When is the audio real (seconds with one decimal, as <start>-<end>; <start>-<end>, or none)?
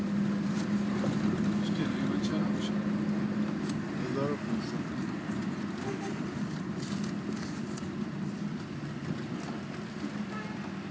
0.0-10.9